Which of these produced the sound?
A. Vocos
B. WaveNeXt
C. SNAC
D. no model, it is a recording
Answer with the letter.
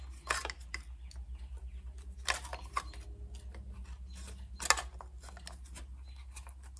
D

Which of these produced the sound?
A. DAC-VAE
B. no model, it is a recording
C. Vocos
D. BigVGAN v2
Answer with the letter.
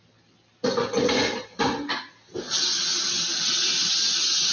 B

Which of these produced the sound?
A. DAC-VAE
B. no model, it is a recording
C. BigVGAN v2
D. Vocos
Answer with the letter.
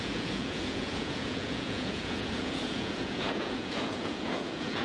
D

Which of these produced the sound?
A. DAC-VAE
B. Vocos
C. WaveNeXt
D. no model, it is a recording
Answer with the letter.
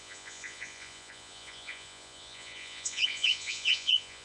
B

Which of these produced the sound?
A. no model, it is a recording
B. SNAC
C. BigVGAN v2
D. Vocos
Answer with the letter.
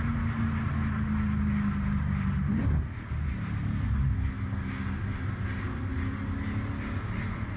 A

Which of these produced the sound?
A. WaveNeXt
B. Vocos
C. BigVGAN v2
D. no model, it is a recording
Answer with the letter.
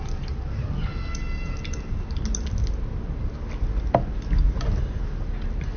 D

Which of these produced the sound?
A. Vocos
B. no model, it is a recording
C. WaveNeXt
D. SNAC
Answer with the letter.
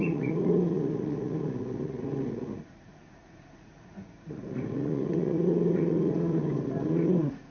A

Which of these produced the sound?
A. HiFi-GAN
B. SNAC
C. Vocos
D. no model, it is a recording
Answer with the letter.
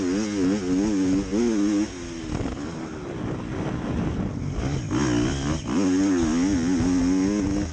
D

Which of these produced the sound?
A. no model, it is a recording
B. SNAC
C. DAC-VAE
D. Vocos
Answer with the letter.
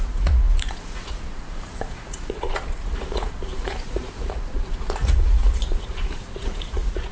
D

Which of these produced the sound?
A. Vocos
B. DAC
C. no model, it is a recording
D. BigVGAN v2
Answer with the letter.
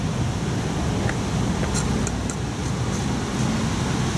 C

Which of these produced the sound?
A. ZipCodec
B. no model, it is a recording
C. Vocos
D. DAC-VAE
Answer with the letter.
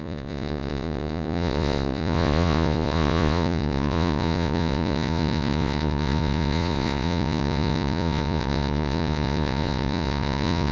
C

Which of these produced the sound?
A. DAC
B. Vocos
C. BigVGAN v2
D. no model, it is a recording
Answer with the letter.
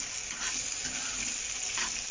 D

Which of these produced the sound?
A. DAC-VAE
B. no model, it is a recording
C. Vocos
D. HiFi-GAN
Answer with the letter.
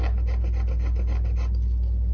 B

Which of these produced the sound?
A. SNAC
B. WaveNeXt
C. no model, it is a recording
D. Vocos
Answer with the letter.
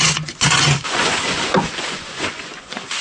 D